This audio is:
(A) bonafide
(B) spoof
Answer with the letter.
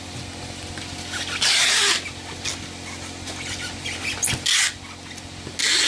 A